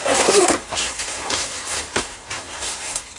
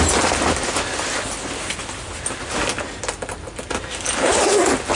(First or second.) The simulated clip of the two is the first